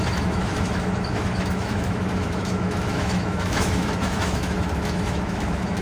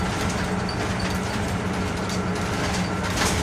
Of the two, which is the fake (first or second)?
first